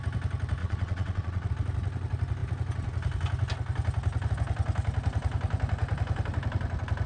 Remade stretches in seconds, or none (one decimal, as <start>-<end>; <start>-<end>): 0.6-1.5